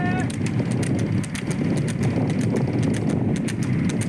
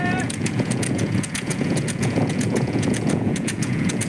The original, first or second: first